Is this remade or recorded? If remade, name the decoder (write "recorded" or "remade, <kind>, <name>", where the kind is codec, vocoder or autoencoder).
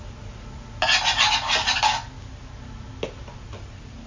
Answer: recorded